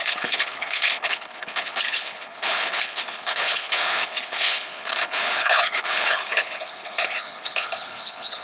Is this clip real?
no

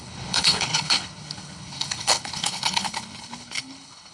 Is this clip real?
no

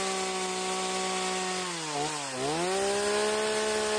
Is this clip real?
yes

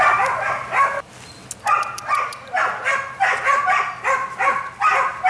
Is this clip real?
yes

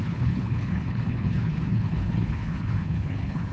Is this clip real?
no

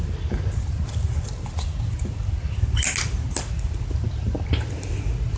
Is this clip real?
yes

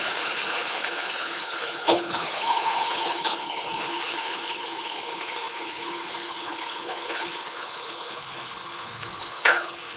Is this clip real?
no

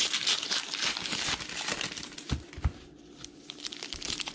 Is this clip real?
yes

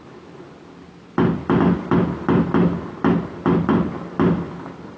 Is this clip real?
yes